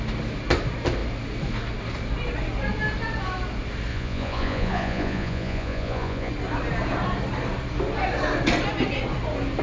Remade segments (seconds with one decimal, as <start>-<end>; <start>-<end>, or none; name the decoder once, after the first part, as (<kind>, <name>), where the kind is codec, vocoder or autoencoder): 3.9-6.3 (vocoder, Vocos)